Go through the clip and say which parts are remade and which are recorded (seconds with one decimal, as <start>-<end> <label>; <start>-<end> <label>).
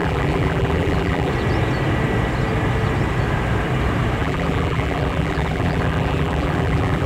0.0-1.3 remade; 1.3-4.2 recorded; 4.2-7.1 remade